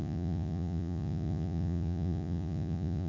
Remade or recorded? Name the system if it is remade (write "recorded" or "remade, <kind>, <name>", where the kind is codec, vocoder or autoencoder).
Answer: remade, vocoder, Vocos